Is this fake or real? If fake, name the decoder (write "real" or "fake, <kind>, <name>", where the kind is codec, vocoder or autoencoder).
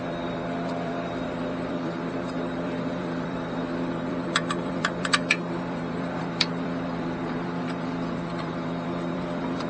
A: fake, vocoder, BigVGAN v2